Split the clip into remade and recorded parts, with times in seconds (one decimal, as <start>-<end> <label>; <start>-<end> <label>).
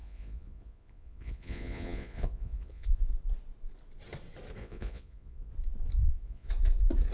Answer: 0.0-3.0 remade; 3.0-4.6 recorded; 4.6-5.5 remade; 5.5-6.0 recorded; 6.0-6.5 remade; 6.5-7.1 recorded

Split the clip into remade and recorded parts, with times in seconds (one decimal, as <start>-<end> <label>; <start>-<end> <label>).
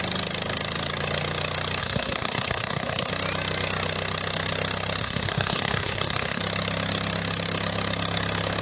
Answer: 0.0-1.8 recorded; 1.8-3.1 remade; 3.1-5.0 recorded; 5.0-6.4 remade; 6.4-8.6 recorded